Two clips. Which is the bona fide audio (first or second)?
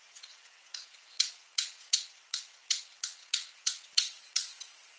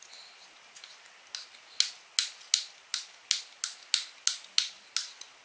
second